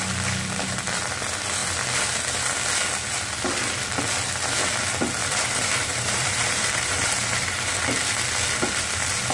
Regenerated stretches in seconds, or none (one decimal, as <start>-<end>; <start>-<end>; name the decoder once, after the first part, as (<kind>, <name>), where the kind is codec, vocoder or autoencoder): 5.2-7.8 (vocoder, BigVGAN v2)